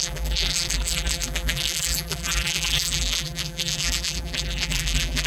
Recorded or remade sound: remade